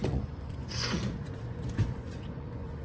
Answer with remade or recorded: remade